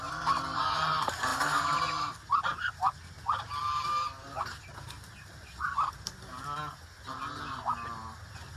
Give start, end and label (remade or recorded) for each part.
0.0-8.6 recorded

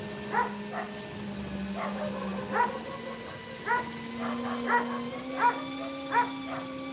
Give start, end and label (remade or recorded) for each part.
0.0-6.9 recorded

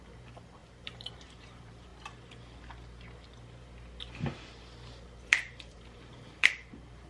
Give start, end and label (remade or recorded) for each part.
0.0-1.9 remade; 1.9-5.2 recorded; 5.2-7.1 remade

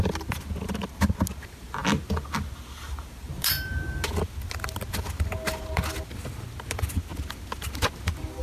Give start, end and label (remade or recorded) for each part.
0.0-8.4 recorded

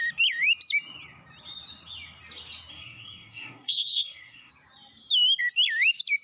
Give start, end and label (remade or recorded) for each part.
0.0-2.7 recorded; 2.7-4.5 remade; 4.5-6.2 recorded

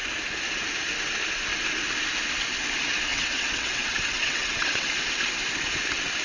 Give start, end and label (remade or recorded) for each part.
0.0-3.1 recorded; 3.1-4.9 remade; 4.9-6.2 recorded